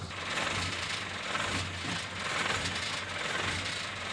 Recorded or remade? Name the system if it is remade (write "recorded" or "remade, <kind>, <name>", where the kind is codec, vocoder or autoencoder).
recorded